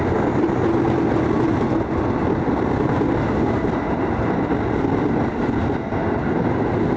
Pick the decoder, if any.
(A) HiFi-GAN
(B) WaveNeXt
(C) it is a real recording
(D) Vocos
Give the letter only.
C